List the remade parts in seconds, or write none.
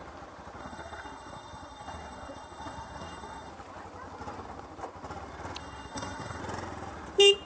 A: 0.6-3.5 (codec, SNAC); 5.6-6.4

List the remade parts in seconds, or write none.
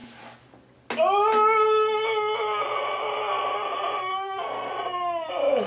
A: 4.1-4.7 (codec, SNAC)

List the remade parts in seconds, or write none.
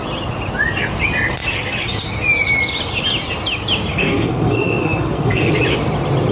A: 3.9-5.5 (codec, SNAC)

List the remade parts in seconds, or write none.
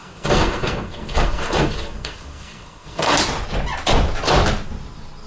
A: 0.0-3.1 (codec, SNAC)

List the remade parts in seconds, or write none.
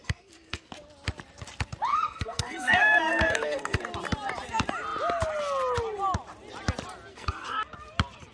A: 0.0-0.7 (codec, SNAC); 1.9-3.8; 7.1-7.6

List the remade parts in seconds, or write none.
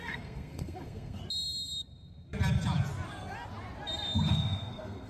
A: 0.0-1.2 (codec, SNAC); 4.3-5.1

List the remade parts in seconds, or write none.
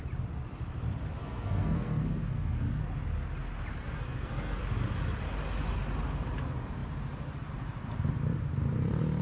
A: 1.2-2.8 (codec, SNAC); 3.8-4.6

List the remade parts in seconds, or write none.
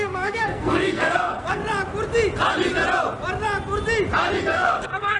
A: 0.0-1.6 (codec, SNAC); 4.4-5.2